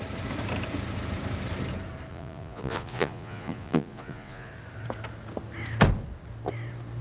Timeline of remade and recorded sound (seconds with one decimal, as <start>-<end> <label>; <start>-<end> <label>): 0.0-2.1 recorded; 2.1-4.5 remade; 4.5-7.0 recorded